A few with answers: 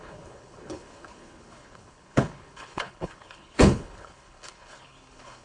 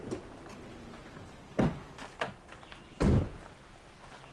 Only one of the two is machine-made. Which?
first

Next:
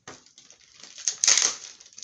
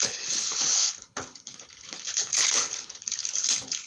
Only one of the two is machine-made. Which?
second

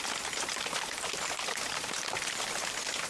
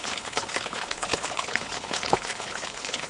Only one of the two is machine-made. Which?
second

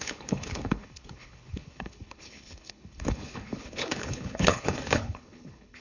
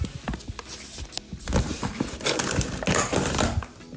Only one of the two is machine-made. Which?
first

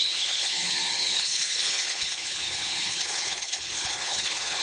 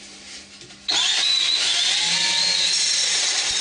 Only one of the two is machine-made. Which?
first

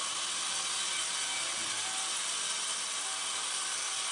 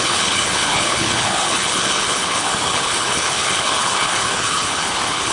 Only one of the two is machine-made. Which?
second